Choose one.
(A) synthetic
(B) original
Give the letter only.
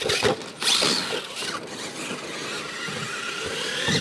B